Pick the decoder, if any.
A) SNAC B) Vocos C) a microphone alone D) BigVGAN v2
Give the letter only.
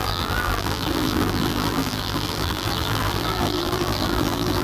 D